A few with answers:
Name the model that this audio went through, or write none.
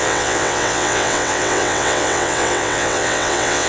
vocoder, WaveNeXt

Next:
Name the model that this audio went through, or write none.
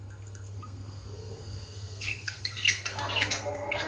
codec, SNAC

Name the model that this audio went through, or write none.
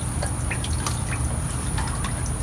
none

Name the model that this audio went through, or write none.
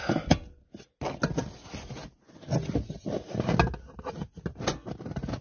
none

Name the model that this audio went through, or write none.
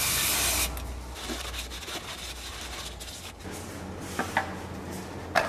none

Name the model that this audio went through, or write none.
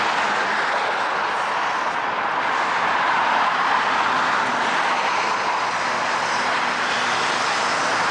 none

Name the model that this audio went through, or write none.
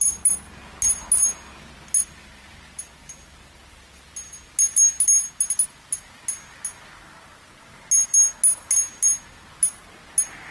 none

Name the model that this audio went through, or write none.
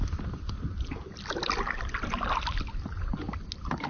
none